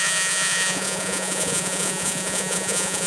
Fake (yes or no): yes